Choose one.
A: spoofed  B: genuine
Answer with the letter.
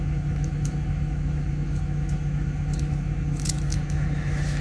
A